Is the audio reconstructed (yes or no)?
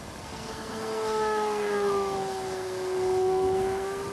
yes